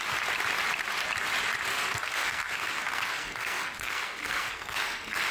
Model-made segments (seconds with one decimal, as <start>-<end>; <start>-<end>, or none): 1.7-5.3